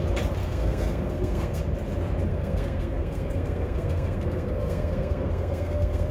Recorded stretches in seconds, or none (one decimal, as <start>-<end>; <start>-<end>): 0.0-0.4; 1.6-2.3